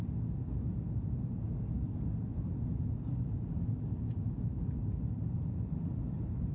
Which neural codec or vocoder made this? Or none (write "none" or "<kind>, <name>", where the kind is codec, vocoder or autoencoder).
none